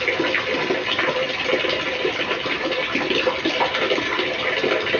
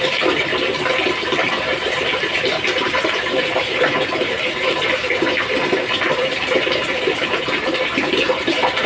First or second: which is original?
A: first